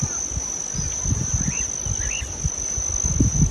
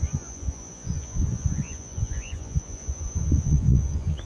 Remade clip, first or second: second